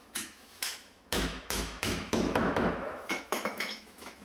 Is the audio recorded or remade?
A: remade